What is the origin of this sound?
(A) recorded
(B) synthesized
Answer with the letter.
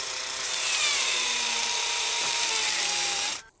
B